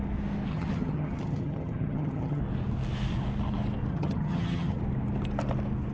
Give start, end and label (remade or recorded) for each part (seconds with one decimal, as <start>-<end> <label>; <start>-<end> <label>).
0.0-0.5 recorded; 0.5-2.4 remade; 2.4-3.9 recorded; 3.9-4.8 remade; 4.8-5.9 recorded